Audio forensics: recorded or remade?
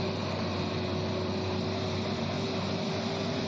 recorded